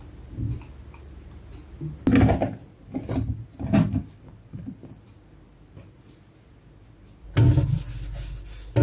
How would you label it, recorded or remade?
recorded